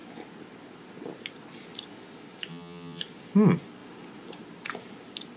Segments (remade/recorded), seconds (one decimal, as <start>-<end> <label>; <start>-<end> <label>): 0.0-2.5 recorded; 2.5-3.0 remade; 3.0-5.4 recorded